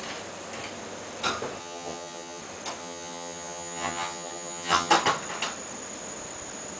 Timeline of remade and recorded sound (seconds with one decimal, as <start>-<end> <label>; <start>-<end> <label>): 0.0-1.6 recorded; 1.6-2.4 remade; 2.4-2.8 recorded; 2.8-4.9 remade; 4.9-6.8 recorded

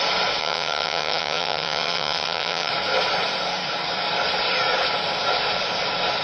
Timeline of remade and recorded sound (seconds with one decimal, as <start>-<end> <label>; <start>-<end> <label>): 0.0-0.4 recorded; 0.4-2.7 remade; 2.7-6.2 recorded

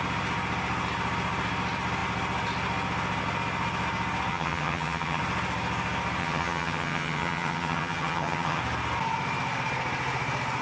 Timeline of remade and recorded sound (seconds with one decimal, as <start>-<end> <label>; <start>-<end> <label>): 0.0-4.3 recorded; 4.3-5.2 remade; 5.2-6.2 recorded; 6.2-8.6 remade; 8.6-10.6 recorded

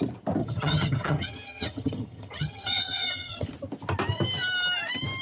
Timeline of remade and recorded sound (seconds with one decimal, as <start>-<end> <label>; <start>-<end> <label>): 0.0-0.4 recorded; 0.4-3.5 remade; 3.5-5.2 recorded

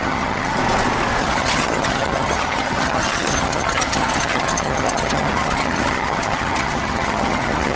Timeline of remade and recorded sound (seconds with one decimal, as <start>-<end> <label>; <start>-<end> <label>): 0.0-0.6 remade; 0.6-1.2 recorded; 1.2-7.8 remade